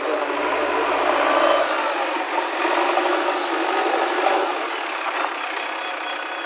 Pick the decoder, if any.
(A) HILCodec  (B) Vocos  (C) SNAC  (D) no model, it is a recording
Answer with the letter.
D